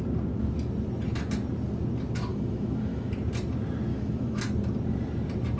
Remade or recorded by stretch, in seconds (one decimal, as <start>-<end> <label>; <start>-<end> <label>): 0.0-2.3 recorded; 2.3-3.1 remade; 3.1-3.9 recorded; 3.9-4.4 remade; 4.4-5.6 recorded